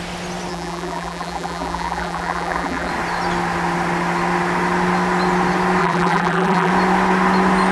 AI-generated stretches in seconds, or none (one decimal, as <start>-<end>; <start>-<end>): 0.5-2.9; 5.8-6.7

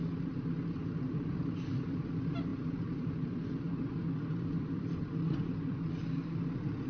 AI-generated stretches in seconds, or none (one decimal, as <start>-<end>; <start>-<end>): 0.8-2.1; 2.5-5.9

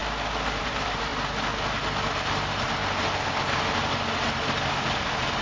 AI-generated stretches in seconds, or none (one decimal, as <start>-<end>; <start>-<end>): 0.6-1.1; 2.1-2.8; 4.8-5.4

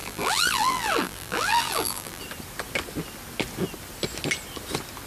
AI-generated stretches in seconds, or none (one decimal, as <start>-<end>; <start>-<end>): 0.0-2.2

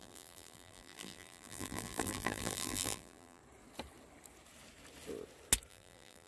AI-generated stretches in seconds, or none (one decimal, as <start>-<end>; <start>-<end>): 0.0-3.4; 5.7-6.3

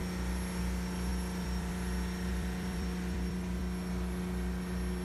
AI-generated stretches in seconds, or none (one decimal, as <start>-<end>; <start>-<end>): 1.1-1.7; 2.3-3.6

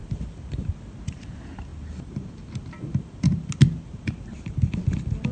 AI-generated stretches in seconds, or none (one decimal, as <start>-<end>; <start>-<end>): 1.1-1.7

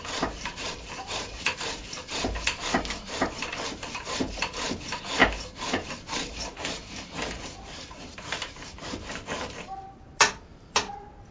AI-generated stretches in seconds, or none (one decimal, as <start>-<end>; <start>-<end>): 0.0-5.2; 6.1-11.3